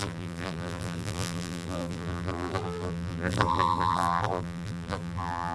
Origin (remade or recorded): remade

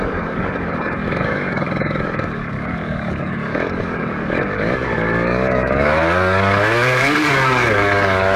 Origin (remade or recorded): remade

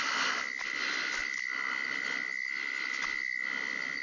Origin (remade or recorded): recorded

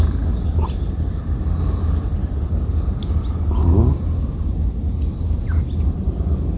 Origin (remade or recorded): recorded